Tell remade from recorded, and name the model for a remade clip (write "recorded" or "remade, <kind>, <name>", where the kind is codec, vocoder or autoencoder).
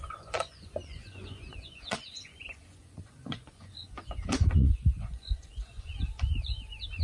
remade, vocoder, Vocos